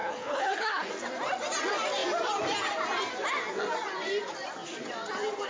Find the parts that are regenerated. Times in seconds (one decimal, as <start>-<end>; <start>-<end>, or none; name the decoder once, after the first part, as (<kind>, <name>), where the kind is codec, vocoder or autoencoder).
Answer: 0.0-0.9 (codec, HILCodec)